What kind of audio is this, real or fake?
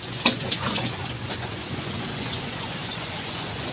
fake